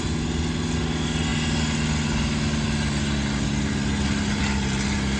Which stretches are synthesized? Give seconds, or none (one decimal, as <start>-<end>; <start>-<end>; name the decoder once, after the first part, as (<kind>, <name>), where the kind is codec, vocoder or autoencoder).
none